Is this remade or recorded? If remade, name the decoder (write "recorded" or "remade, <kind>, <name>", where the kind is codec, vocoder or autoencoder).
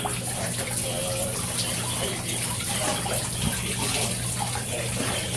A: recorded